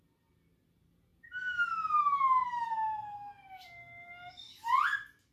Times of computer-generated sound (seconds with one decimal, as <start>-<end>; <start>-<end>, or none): none